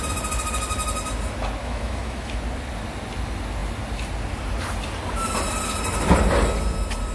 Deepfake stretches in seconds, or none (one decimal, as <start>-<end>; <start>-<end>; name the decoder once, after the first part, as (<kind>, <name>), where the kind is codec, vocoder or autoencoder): 1.6-2.4 (autoencoder, DAC-VAE)